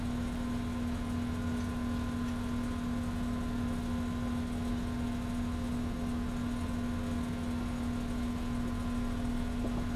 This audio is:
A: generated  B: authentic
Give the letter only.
B